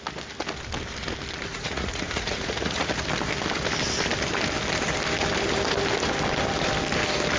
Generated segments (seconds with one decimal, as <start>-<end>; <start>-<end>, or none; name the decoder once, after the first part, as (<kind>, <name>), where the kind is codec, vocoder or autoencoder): 1.5-3.0 (vocoder, Vocos)